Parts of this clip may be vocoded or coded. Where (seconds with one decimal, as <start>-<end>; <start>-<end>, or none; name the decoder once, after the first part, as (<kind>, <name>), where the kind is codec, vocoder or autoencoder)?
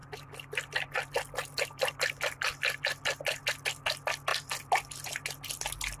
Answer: none